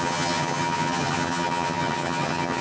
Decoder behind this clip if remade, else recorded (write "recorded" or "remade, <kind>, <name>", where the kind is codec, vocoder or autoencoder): remade, vocoder, HiFi-GAN